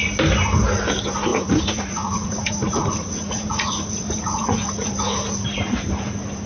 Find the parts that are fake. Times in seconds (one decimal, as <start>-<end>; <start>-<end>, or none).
1.3-4.9